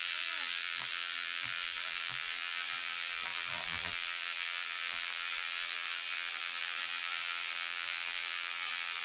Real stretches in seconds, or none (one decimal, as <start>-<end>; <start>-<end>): none